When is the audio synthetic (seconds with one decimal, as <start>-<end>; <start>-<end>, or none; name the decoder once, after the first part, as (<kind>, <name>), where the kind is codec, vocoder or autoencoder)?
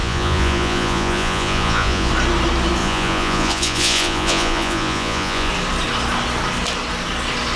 0.0-2.1 (vocoder, Vocos); 2.8-5.5